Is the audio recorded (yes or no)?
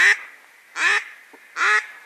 yes